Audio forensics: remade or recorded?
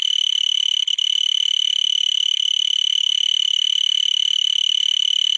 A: recorded